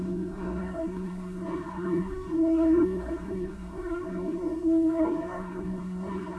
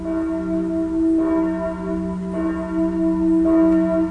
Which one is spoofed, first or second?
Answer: first